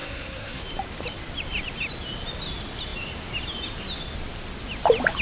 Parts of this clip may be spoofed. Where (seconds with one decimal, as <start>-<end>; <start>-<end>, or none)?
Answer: 0.0-0.6